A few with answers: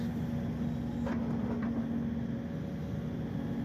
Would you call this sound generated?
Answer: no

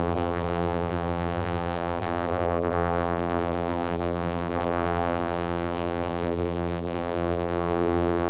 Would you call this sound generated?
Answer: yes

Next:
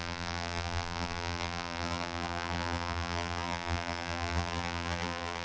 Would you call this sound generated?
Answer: yes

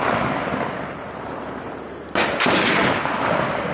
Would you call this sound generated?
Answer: no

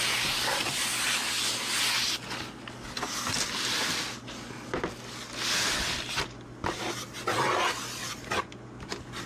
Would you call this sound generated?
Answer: no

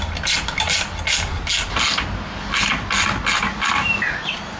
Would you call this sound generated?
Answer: no